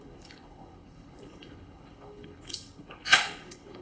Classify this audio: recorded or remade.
remade